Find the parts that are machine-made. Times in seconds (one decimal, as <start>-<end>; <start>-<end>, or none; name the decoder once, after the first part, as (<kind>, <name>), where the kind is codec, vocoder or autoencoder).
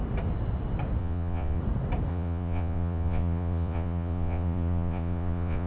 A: 1.0-1.6 (vocoder, Vocos); 2.1-5.7